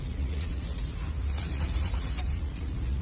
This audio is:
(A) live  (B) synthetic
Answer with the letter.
B